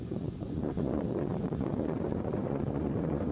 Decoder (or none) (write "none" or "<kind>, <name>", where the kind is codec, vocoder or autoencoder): vocoder, Vocos